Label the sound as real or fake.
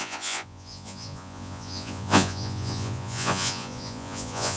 fake